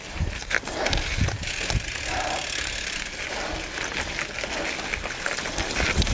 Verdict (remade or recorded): recorded